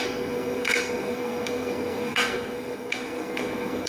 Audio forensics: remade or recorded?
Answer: remade